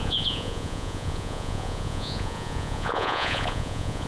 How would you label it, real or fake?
fake